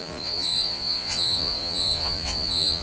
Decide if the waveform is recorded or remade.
remade